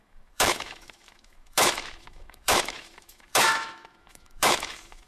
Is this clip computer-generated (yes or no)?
yes